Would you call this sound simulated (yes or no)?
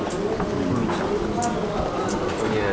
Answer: no